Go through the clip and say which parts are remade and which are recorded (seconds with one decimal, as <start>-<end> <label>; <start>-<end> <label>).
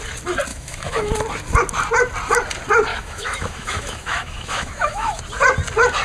0.0-0.5 recorded; 0.5-1.1 remade; 1.1-2.9 recorded; 2.9-5.2 remade; 5.2-6.0 recorded